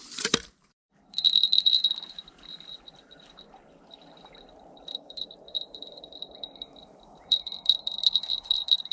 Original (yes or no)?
no